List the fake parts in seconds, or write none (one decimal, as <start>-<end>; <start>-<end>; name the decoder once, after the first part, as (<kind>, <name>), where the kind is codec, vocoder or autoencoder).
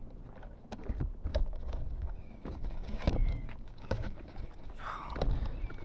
1.3-4.8 (codec, DAC)